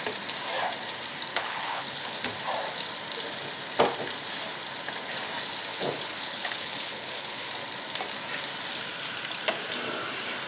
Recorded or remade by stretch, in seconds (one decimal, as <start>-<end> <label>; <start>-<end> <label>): 0.0-1.3 recorded; 1.3-2.1 remade; 2.1-5.7 recorded; 5.7-7.5 remade; 7.5-10.5 recorded